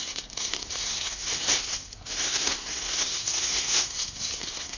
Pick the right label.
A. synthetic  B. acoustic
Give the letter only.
A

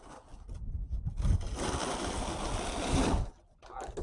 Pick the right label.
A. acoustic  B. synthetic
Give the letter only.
A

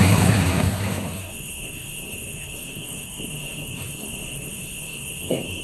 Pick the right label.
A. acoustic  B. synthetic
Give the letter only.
B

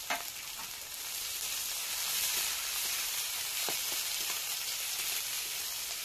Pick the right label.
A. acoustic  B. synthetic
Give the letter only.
A